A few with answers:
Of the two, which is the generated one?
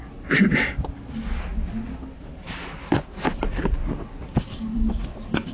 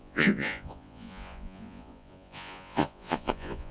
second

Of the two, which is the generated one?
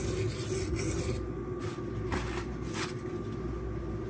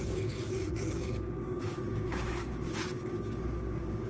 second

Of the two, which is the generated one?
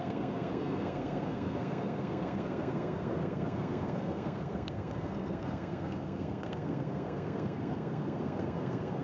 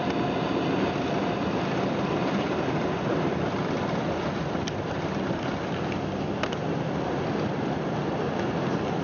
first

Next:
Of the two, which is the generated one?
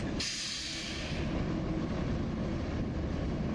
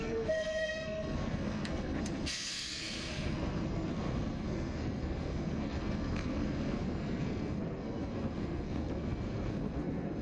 second